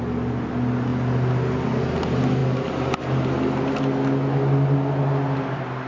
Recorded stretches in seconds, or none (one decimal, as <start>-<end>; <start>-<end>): 0.0-5.9